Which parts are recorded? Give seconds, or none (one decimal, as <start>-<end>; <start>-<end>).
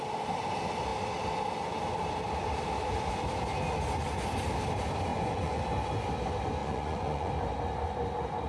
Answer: 0.0-5.1; 5.6-6.6; 7.3-8.5